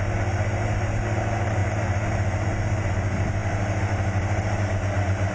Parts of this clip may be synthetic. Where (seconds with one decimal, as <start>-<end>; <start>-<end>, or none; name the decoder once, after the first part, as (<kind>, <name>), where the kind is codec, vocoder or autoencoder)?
none